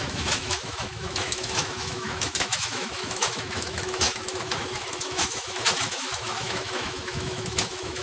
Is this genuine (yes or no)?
no